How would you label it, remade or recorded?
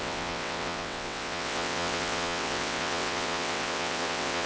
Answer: remade